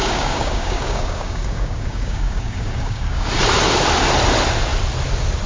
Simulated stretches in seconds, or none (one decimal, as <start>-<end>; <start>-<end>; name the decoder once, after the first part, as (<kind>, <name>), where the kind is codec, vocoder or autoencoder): 0.0-3.3 (codec, DAC)